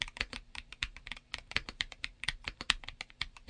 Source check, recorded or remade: remade